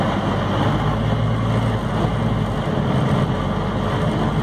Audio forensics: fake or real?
real